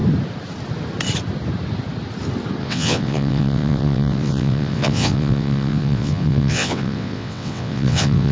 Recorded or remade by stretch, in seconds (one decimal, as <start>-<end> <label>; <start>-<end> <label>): 0.0-2.6 recorded; 2.6-8.3 remade